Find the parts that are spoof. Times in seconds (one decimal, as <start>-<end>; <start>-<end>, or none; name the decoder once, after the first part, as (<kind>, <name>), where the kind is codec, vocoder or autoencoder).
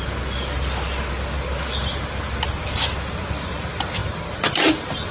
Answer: none